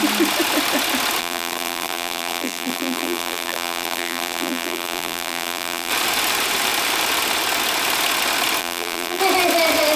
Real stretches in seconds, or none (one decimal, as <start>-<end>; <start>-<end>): 0.0-1.2; 5.9-8.6; 9.2-10.0